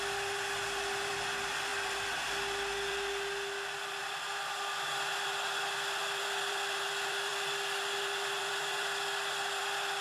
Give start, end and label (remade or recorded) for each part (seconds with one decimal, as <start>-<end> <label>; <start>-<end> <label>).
0.0-10.0 recorded